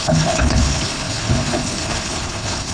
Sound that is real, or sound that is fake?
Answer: fake